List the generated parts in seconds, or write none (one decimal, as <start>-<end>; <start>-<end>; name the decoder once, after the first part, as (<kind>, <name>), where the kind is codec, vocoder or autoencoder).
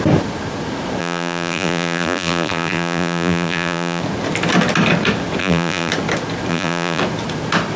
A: 1.0-4.0 (vocoder, BigVGAN v2); 5.4-5.9; 6.5-7.0